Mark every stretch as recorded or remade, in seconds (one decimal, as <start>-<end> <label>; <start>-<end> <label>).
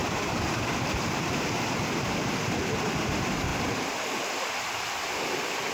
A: 0.0-5.7 remade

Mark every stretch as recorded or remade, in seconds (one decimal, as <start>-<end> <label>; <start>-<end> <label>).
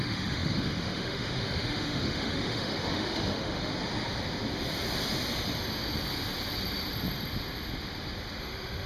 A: 0.0-3.7 remade; 3.7-8.4 recorded; 8.4-8.9 remade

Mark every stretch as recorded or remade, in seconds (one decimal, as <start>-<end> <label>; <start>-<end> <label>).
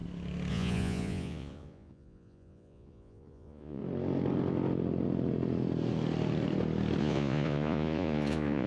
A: 0.0-0.5 recorded; 0.5-3.8 remade; 3.8-7.0 recorded; 7.0-8.7 remade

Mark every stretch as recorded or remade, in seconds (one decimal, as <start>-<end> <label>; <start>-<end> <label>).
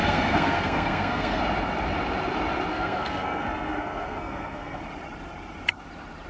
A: 0.0-1.4 remade; 1.4-2.7 recorded; 2.7-4.8 remade; 4.8-6.3 recorded